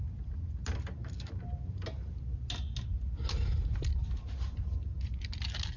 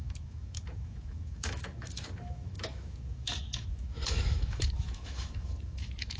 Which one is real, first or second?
first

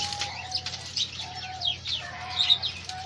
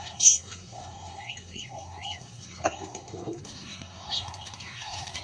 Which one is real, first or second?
first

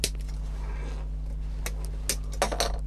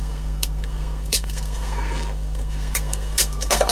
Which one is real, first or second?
first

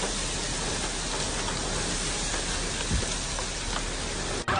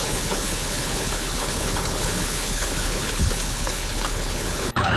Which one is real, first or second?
first